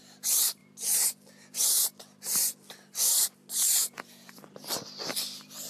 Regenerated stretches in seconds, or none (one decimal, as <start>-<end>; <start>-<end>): 3.8-4.4